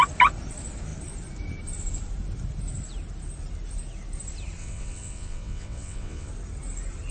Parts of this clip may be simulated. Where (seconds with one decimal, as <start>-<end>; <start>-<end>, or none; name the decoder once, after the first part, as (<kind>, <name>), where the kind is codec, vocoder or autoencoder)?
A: 4.6-6.3 (vocoder, WaveNeXt)